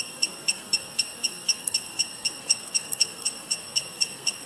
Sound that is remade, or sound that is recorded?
remade